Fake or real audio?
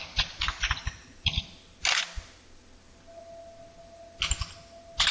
real